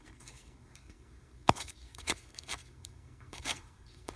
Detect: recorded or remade remade